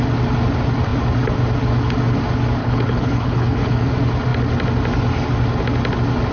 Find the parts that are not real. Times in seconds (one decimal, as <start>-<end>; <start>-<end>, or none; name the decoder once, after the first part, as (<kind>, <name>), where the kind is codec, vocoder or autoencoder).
2.6-3.9 (codec, HILCodec)